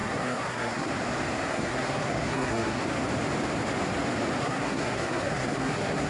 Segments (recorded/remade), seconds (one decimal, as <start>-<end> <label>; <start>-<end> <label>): 0.0-0.9 remade; 0.9-1.5 recorded; 1.5-2.8 remade; 2.8-4.4 recorded; 4.4-6.1 remade